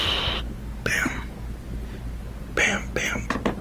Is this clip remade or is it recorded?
recorded